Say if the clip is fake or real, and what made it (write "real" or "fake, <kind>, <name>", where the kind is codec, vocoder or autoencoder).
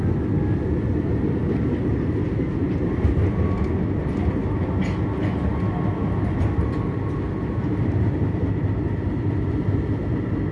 real